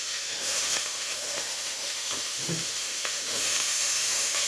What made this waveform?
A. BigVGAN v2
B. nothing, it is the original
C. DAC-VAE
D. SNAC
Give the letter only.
C